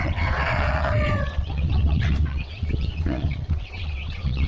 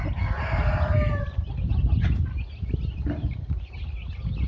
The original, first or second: second